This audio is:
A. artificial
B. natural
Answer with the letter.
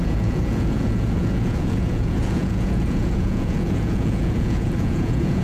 A